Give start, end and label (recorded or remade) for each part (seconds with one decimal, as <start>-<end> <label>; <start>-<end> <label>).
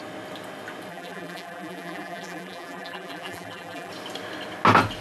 0.0-0.9 recorded; 0.9-3.9 remade; 3.9-5.0 recorded